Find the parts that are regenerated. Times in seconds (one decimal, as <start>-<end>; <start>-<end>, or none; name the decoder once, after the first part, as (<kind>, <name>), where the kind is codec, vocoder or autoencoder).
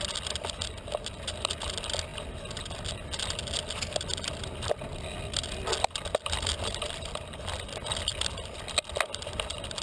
none